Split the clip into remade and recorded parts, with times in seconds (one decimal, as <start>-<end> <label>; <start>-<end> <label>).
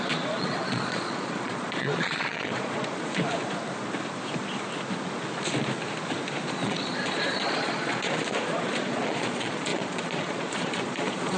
0.0-3.1 remade; 3.1-6.5 recorded; 6.5-11.4 remade